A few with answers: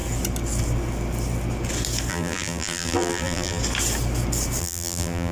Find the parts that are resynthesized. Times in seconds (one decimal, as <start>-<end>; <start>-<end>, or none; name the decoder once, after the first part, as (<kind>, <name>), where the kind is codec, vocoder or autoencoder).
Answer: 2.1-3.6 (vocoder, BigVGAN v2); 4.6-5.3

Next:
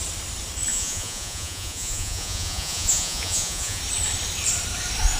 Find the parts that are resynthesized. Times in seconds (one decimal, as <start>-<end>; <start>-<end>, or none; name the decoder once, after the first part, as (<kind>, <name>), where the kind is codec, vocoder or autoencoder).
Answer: 0.7-3.8 (vocoder, Vocos)

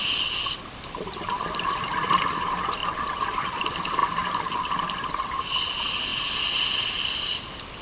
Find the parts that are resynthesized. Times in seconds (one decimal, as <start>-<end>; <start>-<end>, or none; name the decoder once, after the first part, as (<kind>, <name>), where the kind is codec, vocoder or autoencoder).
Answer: 2.8-3.6 (vocoder, BigVGAN v2); 6.1-6.7

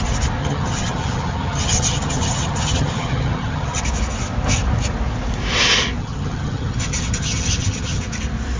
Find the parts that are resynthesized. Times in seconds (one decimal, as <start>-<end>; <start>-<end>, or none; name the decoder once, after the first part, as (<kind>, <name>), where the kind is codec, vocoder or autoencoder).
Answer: 0.4-3.8 (vocoder, HiFi-GAN); 6.0-8.0

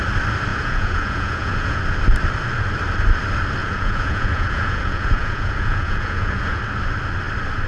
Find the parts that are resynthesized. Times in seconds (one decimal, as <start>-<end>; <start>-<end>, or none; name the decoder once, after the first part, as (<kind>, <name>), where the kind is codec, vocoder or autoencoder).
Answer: 0.5-1.8 (vocoder, Vocos); 3.6-6.6

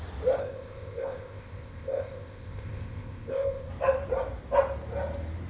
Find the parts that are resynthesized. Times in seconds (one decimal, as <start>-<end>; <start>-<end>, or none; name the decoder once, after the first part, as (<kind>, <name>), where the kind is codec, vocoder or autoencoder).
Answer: 0.4-3.7 (codec, ZipCodec)